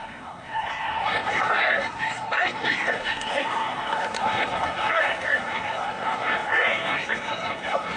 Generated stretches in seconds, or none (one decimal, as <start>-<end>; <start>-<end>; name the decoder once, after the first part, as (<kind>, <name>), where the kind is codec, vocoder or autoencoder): 0.0-8.0 (codec, SNAC)